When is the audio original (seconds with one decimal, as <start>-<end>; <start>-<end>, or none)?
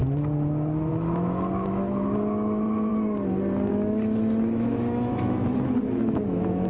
2.9-3.7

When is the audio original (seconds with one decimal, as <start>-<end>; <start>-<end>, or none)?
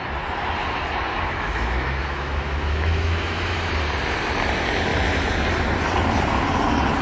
0.0-1.1; 3.7-7.0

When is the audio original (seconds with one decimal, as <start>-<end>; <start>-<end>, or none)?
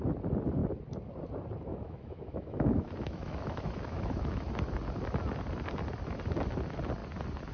0.0-1.7; 4.5-7.5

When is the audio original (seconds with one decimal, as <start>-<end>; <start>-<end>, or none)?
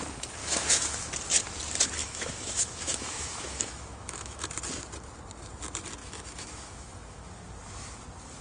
0.0-0.4; 1.1-2.0; 4.5-6.0; 7.3-8.4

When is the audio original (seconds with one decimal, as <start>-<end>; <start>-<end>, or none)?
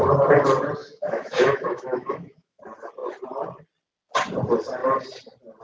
0.0-0.8; 2.6-5.6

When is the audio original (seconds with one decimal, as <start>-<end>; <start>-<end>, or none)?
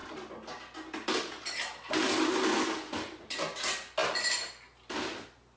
0.0-5.6